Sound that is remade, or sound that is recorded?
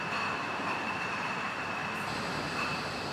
recorded